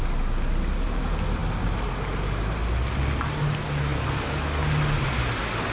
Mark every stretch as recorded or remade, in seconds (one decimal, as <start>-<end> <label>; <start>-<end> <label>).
0.0-5.7 recorded